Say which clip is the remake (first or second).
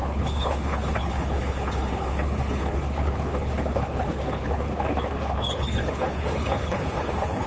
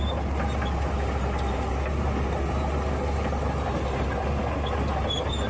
first